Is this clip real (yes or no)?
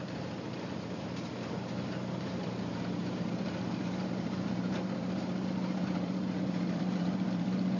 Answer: no